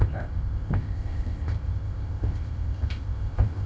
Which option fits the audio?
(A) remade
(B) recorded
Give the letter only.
A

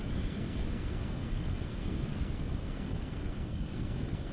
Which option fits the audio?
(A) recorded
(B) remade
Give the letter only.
B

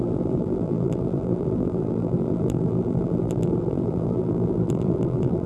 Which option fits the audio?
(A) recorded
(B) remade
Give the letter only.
B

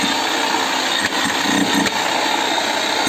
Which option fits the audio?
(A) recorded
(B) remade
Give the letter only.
A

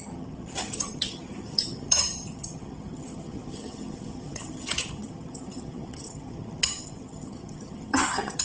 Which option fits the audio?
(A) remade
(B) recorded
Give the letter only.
A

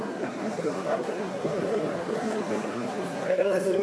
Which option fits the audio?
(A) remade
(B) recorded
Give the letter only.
A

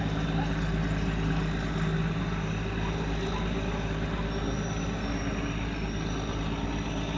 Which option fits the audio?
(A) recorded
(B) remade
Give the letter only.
A